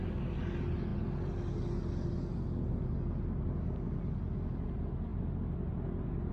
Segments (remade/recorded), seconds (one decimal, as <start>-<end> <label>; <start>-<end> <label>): 0.0-6.3 recorded